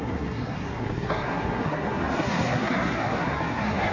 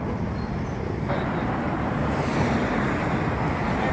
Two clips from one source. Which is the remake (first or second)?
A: first